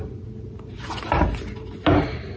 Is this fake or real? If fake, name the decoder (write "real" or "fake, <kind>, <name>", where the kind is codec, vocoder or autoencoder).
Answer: real